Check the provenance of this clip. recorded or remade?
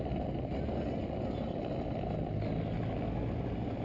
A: recorded